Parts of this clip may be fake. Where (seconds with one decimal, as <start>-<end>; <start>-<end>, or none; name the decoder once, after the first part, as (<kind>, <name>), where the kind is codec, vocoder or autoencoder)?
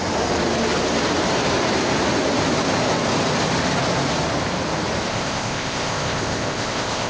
5.1-7.1 (codec, ZipCodec)